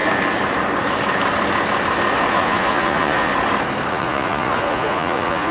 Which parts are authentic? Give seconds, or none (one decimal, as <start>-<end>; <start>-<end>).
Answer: 0.0-2.3; 3.3-3.9